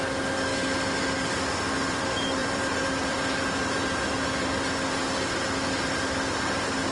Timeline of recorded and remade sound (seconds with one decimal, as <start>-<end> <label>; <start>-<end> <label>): 0.0-2.4 recorded; 2.4-4.2 remade; 4.2-6.9 recorded